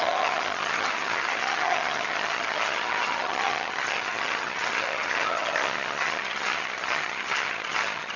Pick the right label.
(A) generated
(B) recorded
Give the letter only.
A